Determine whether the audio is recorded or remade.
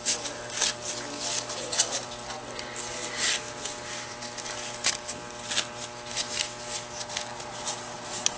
recorded